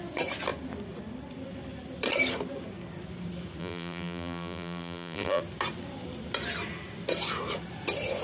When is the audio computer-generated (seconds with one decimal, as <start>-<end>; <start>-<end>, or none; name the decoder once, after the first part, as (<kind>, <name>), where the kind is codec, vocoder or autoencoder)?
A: 3.6-5.4 (vocoder, BigVGAN v2)